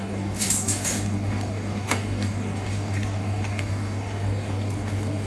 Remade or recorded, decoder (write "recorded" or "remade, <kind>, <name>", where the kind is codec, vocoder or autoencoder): remade, codec, DAC